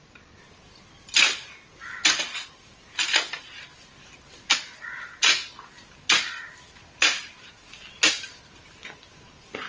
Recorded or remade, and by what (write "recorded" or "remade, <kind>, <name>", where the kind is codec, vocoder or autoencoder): recorded